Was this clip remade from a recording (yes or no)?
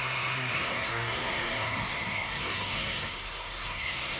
yes